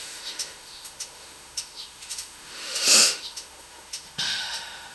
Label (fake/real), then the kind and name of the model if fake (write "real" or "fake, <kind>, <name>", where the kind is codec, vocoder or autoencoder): fake, autoencoder, DAC-VAE